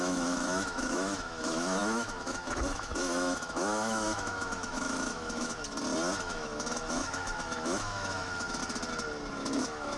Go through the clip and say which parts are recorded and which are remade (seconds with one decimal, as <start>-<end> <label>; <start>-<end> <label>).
0.0-5.5 remade; 5.5-6.2 recorded; 6.2-8.6 remade; 8.6-9.3 recorded; 9.3-10.0 remade